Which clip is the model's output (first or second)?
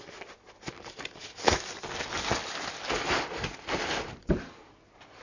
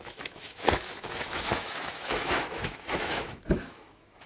second